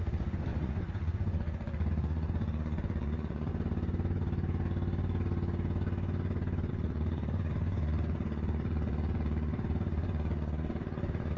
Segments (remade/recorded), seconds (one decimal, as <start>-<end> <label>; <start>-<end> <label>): 0.0-3.5 remade; 3.5-6.7 recorded; 6.7-11.4 remade